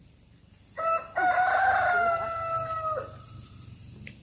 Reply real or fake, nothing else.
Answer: real